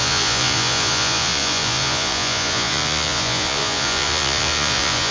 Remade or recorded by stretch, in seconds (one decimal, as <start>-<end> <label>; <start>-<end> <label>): 0.0-5.1 remade